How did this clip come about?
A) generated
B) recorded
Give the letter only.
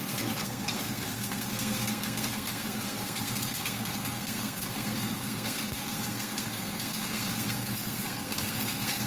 A